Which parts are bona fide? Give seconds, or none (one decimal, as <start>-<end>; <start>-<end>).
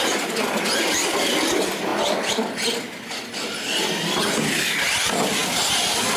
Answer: 0.0-6.2